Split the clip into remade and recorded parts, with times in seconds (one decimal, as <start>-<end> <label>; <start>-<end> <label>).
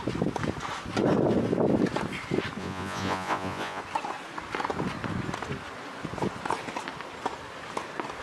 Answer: 0.0-2.6 recorded; 2.6-3.8 remade; 3.8-8.2 recorded